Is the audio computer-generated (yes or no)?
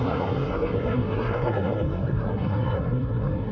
yes